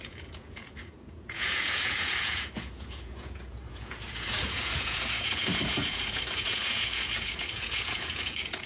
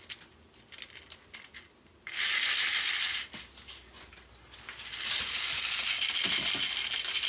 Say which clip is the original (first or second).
second